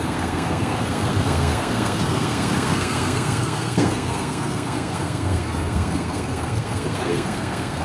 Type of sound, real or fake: fake